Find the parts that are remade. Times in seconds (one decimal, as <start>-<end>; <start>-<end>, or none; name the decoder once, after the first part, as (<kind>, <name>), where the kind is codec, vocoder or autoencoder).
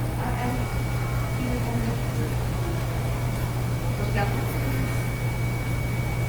none